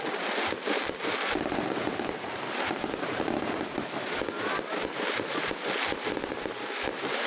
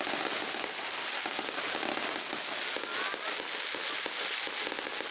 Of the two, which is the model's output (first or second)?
first